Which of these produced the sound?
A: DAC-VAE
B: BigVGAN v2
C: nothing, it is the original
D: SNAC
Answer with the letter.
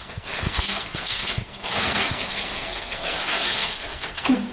D